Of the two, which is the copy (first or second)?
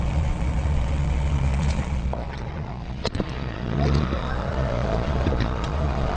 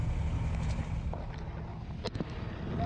first